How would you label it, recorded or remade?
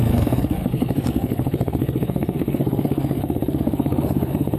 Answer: remade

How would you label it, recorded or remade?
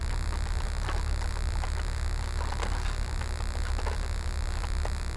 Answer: recorded